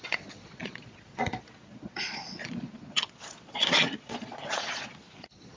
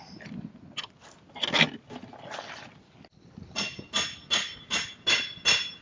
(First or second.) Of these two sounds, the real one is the second